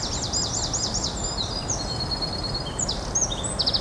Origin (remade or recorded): recorded